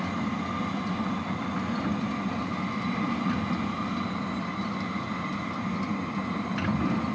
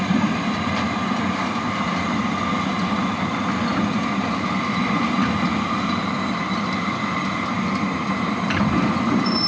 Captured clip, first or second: first